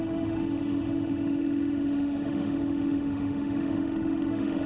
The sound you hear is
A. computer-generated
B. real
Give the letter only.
A